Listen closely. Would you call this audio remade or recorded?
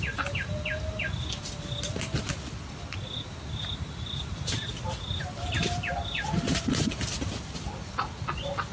recorded